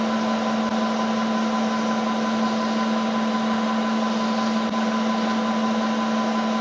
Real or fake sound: real